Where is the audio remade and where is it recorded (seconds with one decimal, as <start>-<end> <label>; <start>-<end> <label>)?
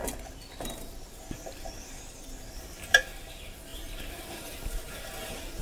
0.0-2.0 remade; 2.0-3.7 recorded; 3.7-4.9 remade; 4.9-5.6 recorded